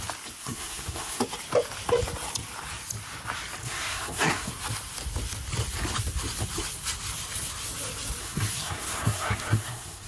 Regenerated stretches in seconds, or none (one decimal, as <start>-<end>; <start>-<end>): 0.4-1.2; 3.6-4.5; 8.2-10.1